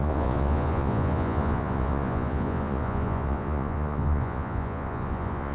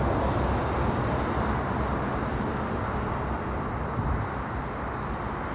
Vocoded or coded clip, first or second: first